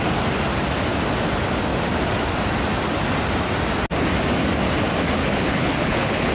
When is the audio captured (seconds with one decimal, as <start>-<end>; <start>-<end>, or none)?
0.0-5.2